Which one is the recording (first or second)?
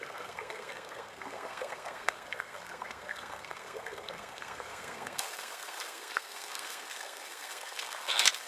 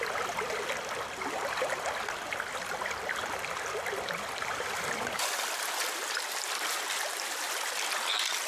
second